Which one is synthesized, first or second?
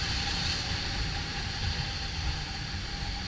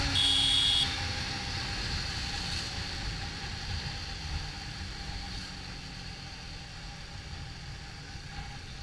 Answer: first